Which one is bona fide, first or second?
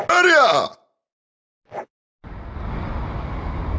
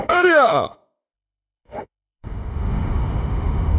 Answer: first